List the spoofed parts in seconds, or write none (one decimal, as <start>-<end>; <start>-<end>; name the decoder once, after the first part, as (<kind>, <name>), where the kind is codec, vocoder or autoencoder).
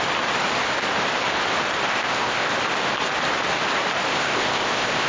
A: 1.9-2.5 (codec, ZipCodec); 4.1-5.1